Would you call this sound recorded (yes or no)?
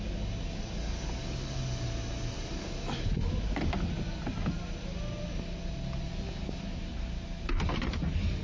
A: yes